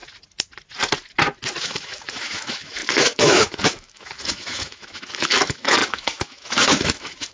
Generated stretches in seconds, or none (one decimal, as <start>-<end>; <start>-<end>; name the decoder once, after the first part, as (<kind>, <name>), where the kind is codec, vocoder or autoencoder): 1.6-7.3 (autoencoder, DAC-VAE)